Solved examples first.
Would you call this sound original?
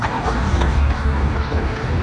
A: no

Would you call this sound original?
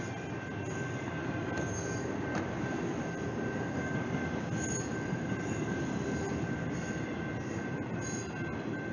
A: yes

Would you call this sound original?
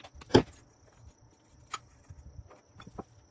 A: yes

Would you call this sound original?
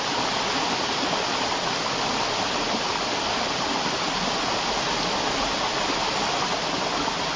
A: yes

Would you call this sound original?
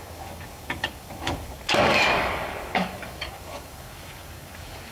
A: no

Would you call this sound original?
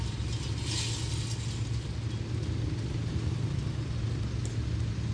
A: yes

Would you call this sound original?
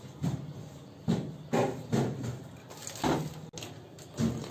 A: yes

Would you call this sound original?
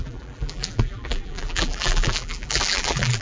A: no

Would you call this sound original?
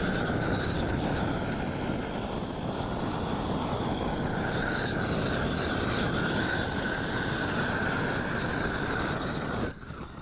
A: yes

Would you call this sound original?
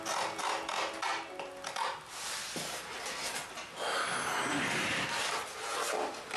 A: yes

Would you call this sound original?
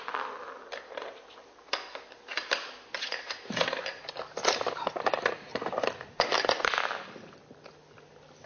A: yes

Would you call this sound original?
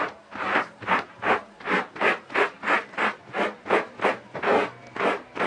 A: yes